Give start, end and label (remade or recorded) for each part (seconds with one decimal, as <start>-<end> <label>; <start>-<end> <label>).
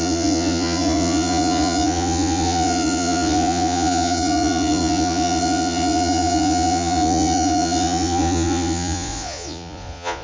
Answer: 0.0-10.2 remade